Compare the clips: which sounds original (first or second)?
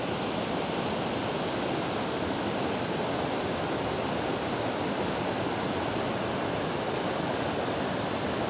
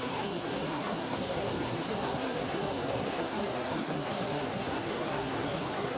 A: first